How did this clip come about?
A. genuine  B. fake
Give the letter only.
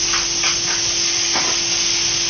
A